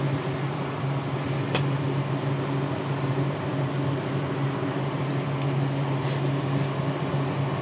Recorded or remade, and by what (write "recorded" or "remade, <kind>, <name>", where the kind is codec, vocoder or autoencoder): recorded